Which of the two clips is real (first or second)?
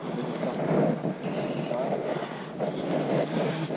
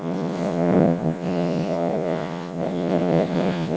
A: first